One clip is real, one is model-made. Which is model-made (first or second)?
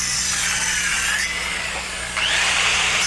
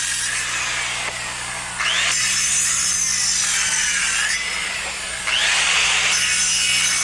first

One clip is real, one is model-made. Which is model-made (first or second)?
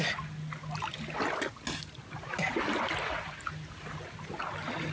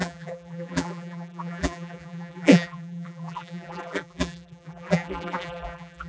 second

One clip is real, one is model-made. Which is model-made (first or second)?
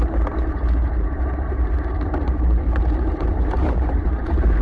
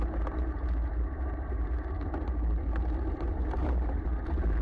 first